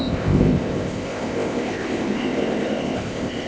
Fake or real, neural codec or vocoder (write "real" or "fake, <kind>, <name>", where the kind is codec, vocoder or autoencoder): fake, codec, ZipCodec